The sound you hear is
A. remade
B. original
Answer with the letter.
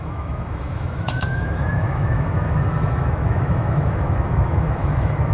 A